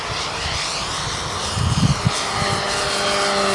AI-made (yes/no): no